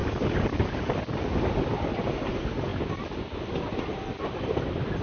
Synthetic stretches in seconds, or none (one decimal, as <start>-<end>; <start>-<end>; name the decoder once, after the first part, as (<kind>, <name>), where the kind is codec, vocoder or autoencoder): none